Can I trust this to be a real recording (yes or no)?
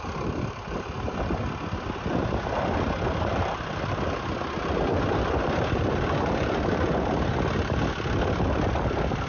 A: yes